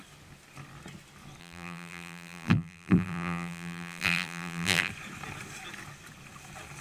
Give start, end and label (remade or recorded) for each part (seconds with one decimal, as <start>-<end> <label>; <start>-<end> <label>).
0.0-1.4 recorded; 1.4-4.9 remade; 4.9-6.8 recorded